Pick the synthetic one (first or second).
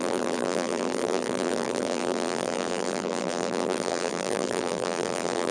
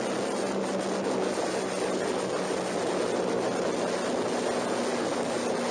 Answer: first